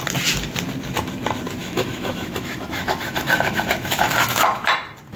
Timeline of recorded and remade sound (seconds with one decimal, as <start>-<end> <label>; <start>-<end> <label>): 0.0-1.6 recorded; 1.6-4.7 remade; 4.7-5.2 recorded